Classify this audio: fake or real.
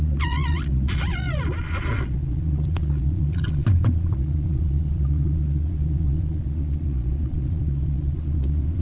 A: fake